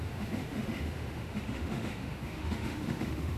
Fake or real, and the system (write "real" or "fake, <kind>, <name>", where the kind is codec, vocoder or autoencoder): fake, autoencoder, DAC-VAE